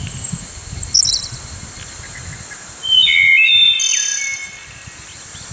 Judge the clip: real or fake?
real